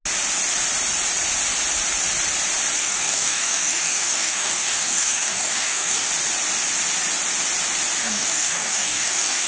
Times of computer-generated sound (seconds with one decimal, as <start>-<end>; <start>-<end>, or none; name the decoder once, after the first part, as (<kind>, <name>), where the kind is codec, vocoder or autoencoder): 2.8-6.1 (codec, DAC); 8.0-9.5

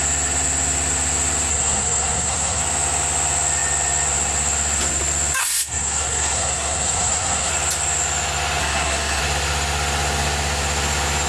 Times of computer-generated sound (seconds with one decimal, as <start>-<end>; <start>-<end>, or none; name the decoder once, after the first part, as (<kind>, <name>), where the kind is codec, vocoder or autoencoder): 1.5-2.6 (codec, SNAC); 5.4-7.5; 8.6-9.2

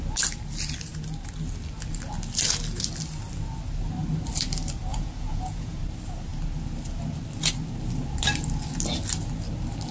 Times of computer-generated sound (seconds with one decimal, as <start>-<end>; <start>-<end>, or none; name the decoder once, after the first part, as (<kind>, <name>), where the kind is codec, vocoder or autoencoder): 4.9-5.8 (vocoder, Vocos)

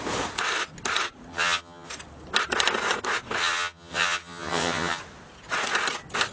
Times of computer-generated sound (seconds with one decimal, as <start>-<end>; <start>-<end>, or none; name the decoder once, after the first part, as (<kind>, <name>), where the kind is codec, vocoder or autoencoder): 1.3-1.9 (vocoder, HiFi-GAN); 3.4-5.0